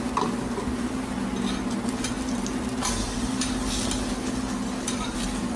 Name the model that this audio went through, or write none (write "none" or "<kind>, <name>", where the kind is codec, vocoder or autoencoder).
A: none